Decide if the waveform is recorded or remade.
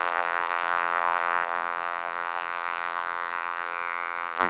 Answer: remade